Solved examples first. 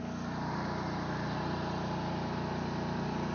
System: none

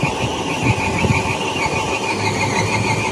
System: none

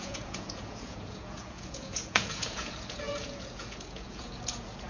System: vocoder, Vocos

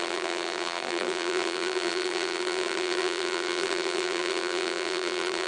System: vocoder, BigVGAN v2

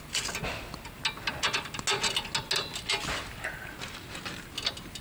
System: none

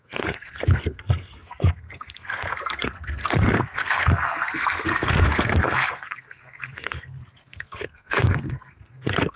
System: codec, SNAC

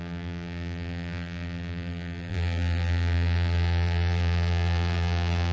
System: vocoder, BigVGAN v2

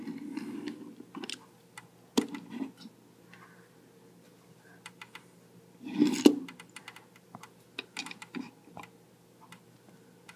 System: none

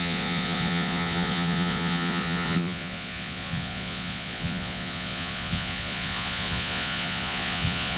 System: vocoder, Vocos